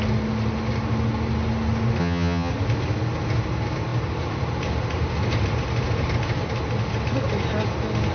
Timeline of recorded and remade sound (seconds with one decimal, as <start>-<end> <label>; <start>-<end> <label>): 0.0-2.0 recorded; 2.0-2.5 remade; 2.5-8.1 recorded